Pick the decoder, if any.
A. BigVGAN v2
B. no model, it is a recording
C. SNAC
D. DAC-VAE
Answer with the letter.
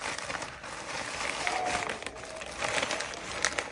B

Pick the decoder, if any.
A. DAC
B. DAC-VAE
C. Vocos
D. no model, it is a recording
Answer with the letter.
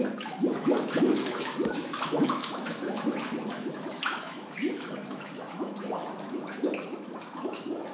B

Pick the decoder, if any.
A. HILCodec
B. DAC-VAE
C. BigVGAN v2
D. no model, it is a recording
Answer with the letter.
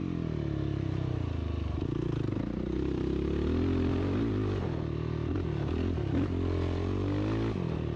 D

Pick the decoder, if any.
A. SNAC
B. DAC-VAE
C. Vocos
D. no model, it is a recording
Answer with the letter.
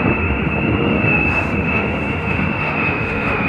B